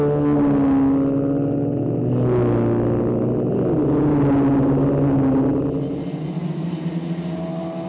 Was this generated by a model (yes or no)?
no